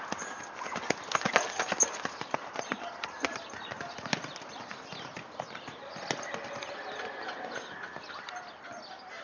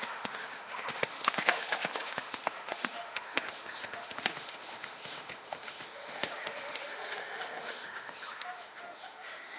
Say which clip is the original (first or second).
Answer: first